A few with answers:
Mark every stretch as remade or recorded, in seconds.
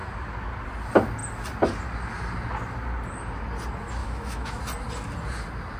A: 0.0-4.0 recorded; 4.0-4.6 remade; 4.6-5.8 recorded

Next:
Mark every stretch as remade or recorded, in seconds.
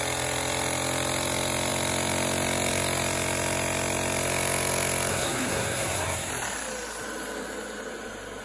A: 0.0-5.1 recorded; 5.1-6.3 remade; 6.3-8.4 recorded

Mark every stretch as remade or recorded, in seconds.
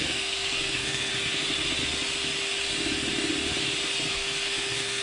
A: 0.0-1.1 remade; 1.1-4.1 recorded; 4.1-5.0 remade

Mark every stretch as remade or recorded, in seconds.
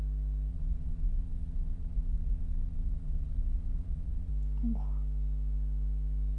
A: 0.0-0.5 recorded; 0.5-4.3 remade; 4.3-6.4 recorded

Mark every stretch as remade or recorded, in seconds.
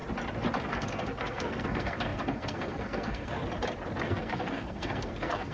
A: 0.0-0.7 recorded; 0.7-3.4 remade; 3.4-4.0 recorded; 4.0-5.5 remade